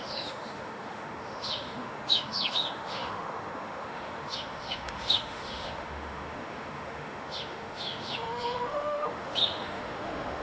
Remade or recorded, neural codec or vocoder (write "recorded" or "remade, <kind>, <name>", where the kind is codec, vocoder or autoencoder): remade, autoencoder, DAC-VAE